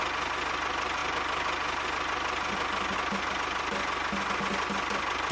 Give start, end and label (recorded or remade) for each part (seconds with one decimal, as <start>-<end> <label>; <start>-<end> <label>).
0.0-5.3 recorded